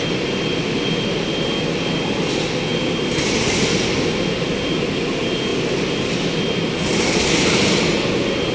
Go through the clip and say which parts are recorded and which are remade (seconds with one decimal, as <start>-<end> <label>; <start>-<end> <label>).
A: 0.0-8.5 recorded